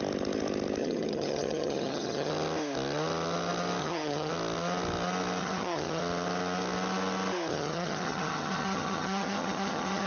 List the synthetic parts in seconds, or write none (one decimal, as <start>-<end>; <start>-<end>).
0.8-2.3; 3.8-4.3; 5.4-6.0; 7.5-10.1